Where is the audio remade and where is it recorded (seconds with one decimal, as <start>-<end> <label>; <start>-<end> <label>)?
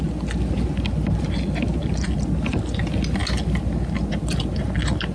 0.0-5.1 recorded